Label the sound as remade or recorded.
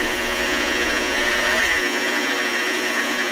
remade